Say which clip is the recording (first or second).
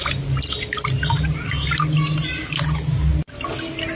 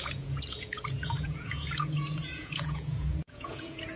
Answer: first